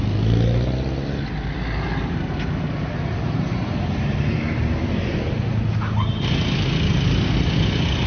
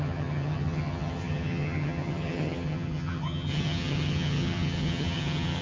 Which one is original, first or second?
first